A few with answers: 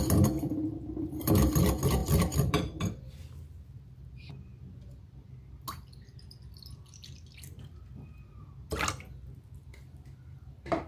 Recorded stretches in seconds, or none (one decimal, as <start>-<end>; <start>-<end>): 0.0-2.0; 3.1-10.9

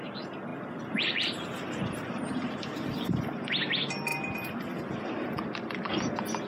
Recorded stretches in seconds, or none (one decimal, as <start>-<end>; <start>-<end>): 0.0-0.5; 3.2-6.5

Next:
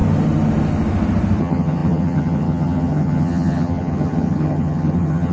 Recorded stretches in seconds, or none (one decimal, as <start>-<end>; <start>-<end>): 0.0-1.4

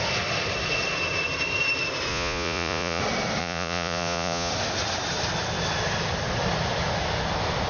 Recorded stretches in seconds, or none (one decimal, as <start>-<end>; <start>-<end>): 0.0-2.1; 3.0-3.4; 4.5-7.7

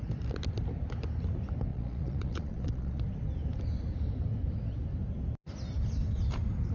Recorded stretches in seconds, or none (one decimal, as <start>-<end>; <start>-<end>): 0.0-1.7; 3.0-6.7

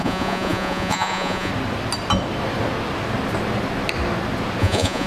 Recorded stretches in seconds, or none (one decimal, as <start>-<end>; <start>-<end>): 1.5-4.6

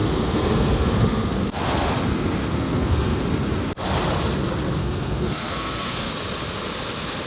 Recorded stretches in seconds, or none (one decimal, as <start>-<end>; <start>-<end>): 1.4-2.4; 3.2-4.8; 6.1-7.3